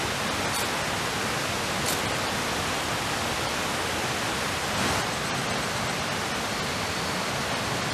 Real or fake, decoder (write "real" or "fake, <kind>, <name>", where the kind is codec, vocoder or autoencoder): real